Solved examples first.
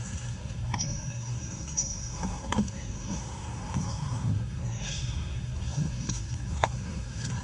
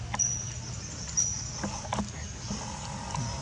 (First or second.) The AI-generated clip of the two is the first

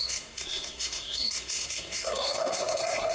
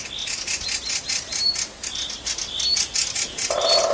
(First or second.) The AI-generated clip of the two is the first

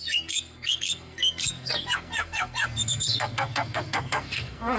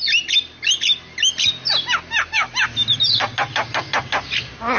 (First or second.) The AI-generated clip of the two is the first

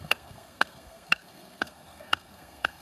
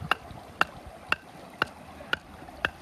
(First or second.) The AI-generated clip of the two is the first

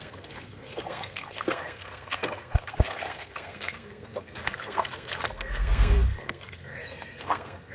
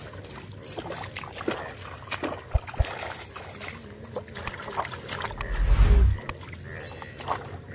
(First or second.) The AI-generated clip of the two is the first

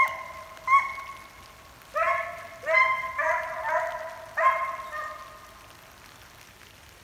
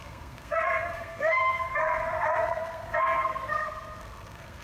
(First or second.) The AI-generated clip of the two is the second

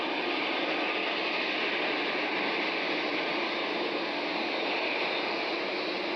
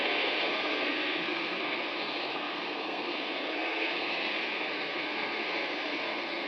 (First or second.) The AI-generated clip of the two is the second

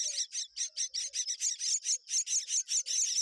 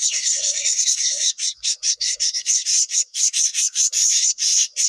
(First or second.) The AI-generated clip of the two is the second